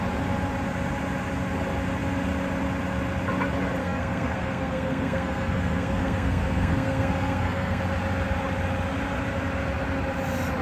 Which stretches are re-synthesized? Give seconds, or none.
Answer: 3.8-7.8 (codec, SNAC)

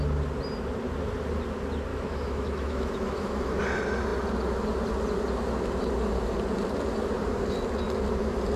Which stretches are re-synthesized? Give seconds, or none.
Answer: 1.9-3.6 (autoencoder, DAC-VAE)